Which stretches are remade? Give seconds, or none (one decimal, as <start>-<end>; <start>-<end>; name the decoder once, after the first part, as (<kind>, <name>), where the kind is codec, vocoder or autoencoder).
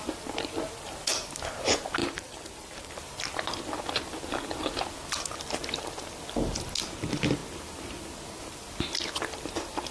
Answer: 2.0-2.9 (vocoder, BigVGAN v2)